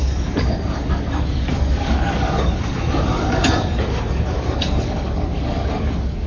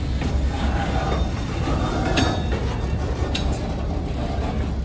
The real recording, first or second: second